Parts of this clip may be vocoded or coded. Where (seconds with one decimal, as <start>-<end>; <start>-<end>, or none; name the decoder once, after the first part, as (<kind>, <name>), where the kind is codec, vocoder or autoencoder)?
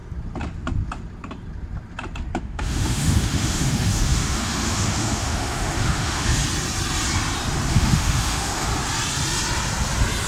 2.4-6.4 (autoencoder, DAC-VAE); 7.7-8.7